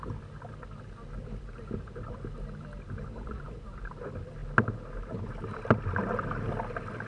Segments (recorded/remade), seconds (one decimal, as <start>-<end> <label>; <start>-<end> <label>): 0.0-7.1 recorded